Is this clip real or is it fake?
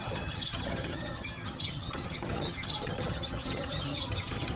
fake